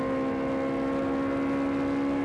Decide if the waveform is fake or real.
real